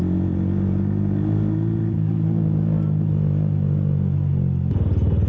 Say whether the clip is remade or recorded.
recorded